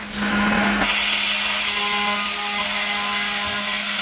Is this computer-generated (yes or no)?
no